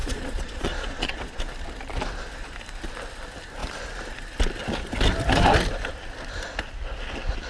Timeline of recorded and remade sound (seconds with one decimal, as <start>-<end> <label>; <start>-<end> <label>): 0.0-1.4 remade; 1.4-7.5 recorded